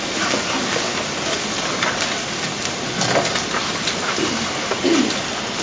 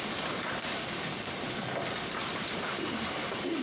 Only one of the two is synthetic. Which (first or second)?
second